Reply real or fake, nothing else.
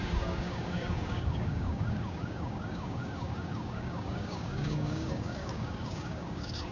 fake